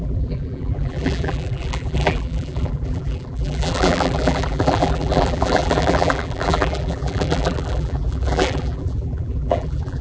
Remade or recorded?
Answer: remade